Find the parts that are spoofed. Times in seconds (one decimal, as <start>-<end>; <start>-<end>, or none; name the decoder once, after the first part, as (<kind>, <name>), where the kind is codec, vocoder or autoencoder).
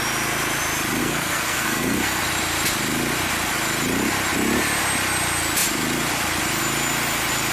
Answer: 1.0-2.2 (codec, SNAC)